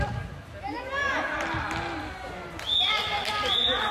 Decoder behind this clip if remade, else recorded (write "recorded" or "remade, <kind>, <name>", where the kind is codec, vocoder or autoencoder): recorded